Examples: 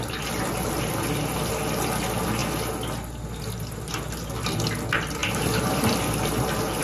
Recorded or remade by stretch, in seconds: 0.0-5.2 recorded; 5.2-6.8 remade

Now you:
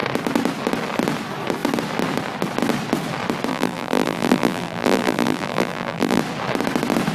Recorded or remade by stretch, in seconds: 0.0-3.5 recorded; 3.5-6.2 remade; 6.2-7.1 recorded

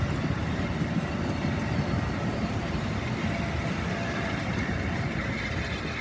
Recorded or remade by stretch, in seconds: 0.0-0.4 recorded; 0.4-1.1 remade; 1.1-2.3 recorded; 2.3-5.4 remade; 5.4-6.0 recorded